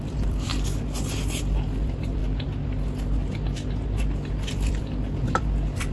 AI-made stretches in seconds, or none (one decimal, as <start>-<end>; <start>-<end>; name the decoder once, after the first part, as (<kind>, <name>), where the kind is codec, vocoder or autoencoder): 0.0-0.5 (vocoder, BigVGAN v2); 1.4-2.2; 4.5-5.9

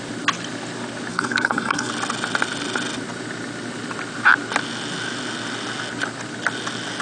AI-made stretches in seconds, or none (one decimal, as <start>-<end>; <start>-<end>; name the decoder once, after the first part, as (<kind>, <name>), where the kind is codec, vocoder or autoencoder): 1.1-1.9 (codec, SNAC)